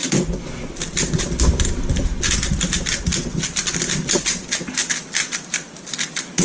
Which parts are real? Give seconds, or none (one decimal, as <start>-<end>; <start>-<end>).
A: 0.0-6.4